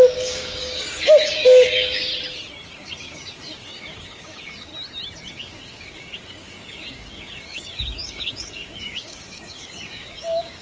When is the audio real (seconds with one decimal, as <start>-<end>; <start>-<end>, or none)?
2.1-2.7; 4.7-5.3